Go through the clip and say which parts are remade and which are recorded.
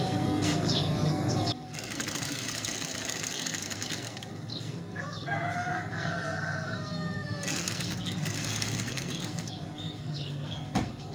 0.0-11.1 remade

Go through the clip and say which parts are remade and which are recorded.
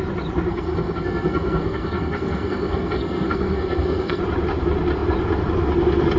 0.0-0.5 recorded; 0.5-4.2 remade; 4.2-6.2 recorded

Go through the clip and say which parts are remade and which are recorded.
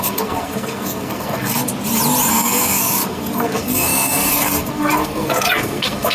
0.0-1.7 remade; 1.7-2.3 recorded; 2.3-6.1 remade